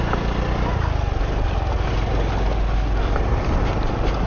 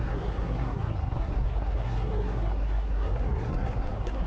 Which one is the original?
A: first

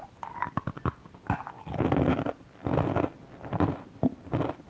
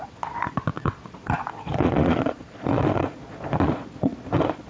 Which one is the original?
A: first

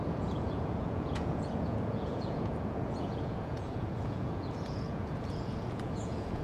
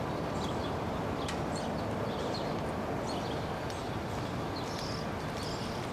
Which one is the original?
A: second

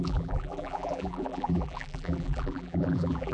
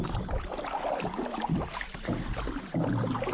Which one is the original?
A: second